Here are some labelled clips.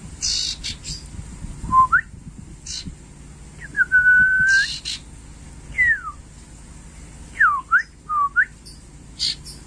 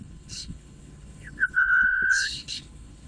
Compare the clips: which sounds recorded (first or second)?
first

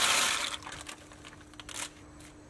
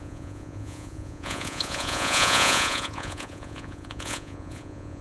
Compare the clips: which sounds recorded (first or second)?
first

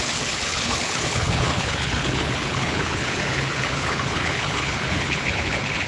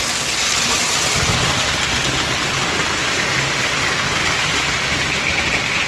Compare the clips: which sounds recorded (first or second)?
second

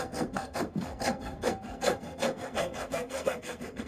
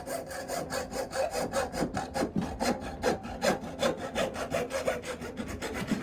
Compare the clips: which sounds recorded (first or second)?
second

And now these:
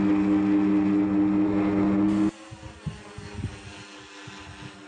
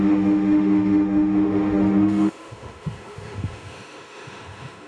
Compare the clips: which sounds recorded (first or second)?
first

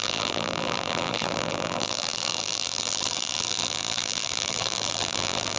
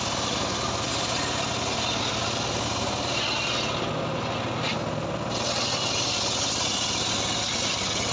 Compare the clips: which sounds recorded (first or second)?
second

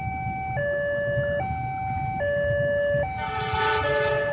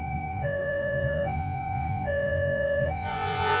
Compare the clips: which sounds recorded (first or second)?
first